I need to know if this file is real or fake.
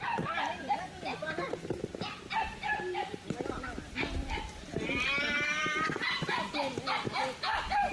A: fake